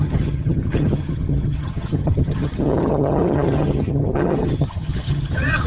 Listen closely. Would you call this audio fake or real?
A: fake